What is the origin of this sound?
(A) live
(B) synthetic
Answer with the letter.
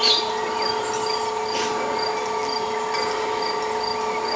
A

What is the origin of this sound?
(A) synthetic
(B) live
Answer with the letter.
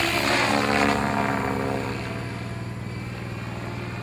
B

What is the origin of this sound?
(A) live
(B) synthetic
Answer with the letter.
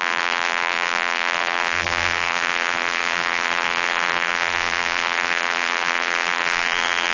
B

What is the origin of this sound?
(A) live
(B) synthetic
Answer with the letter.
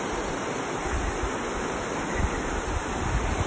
A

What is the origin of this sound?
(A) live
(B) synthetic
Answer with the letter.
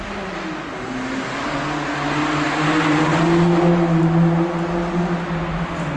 A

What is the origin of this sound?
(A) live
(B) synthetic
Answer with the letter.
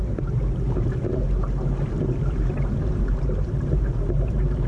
B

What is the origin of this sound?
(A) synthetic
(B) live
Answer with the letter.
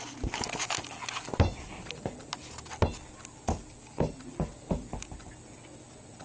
B